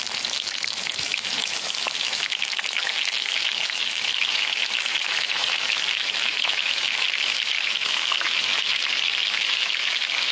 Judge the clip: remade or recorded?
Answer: remade